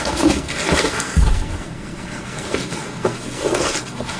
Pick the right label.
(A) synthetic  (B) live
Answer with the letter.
A